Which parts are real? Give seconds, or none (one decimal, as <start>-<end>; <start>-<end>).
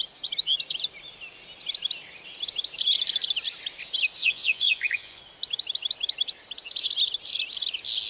0.0-4.2; 5.2-8.1